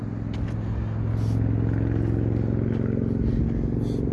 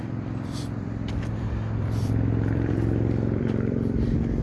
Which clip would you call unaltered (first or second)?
first